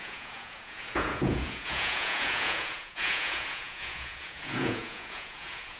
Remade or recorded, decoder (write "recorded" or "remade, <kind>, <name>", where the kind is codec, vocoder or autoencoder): remade, vocoder, Vocos